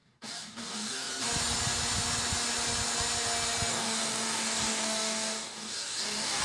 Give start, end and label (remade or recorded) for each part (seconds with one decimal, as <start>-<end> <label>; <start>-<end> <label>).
0.0-1.1 remade; 1.1-3.7 recorded; 3.7-6.4 remade